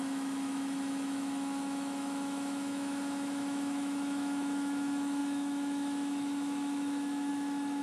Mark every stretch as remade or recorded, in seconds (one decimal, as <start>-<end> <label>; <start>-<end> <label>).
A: 0.0-7.8 remade